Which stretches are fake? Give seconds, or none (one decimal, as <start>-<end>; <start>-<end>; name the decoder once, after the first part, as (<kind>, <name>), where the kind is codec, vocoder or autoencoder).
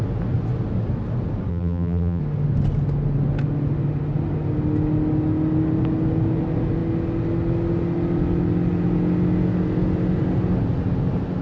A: 1.5-2.2 (vocoder, BigVGAN v2)